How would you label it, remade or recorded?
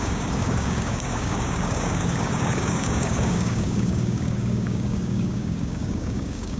remade